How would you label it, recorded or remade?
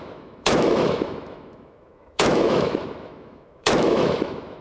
remade